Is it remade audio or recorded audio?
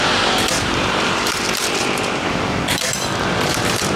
remade